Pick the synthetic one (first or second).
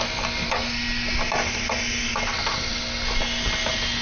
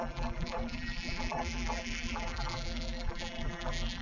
second